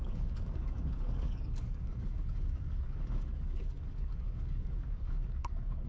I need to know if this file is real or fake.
fake